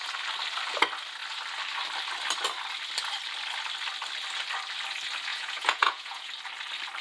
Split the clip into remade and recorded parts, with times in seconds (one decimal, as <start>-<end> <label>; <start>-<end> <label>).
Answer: 0.0-5.3 recorded; 5.3-6.3 remade; 6.3-7.0 recorded